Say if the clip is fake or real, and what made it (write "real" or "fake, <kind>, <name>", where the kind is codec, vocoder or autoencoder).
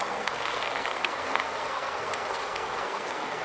fake, codec, SNAC